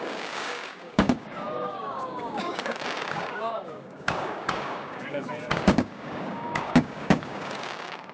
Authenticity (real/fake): fake